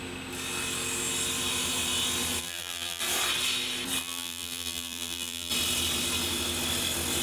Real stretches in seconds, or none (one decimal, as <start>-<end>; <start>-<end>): 0.0-2.4; 3.0-4.0; 5.5-7.2